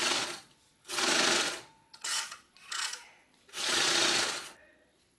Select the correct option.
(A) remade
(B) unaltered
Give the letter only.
A